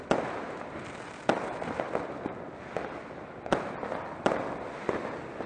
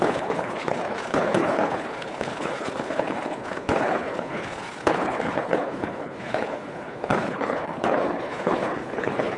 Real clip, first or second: first